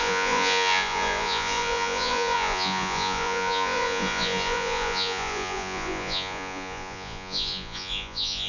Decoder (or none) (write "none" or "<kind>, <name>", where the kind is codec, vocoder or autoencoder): vocoder, Vocos